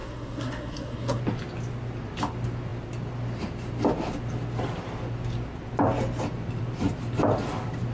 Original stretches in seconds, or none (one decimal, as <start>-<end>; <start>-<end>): 1.2-7.9